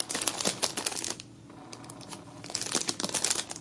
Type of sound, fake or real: real